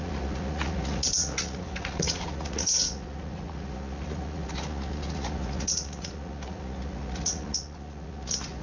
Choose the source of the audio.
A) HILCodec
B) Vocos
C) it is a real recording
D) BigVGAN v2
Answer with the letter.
B